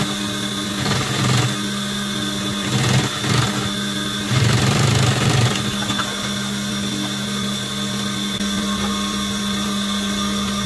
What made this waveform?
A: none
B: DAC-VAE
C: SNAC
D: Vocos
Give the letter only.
A